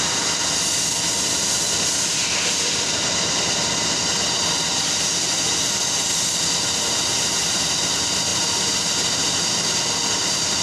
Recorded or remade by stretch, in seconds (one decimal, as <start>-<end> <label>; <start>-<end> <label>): 0.0-10.6 recorded